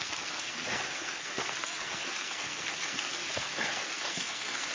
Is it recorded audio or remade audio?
remade